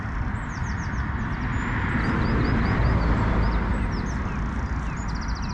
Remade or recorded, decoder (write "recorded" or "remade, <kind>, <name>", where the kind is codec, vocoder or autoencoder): recorded